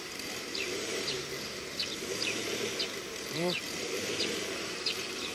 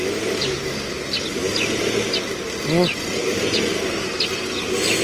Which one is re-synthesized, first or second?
first